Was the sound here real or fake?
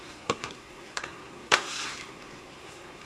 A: fake